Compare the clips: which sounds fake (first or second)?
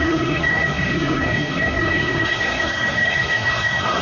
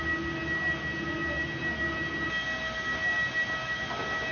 first